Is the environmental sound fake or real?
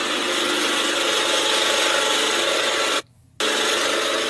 real